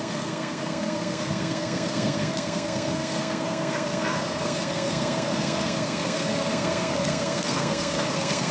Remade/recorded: remade